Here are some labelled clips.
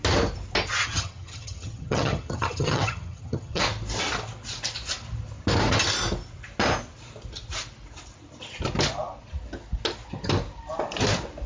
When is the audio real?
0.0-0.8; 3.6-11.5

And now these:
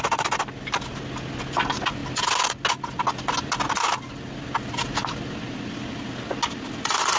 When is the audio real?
0.0-7.2

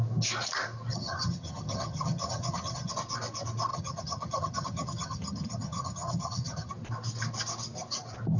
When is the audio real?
0.0-0.9; 2.9-3.7; 6.7-8.4

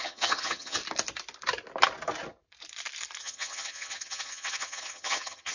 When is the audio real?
0.8-3.2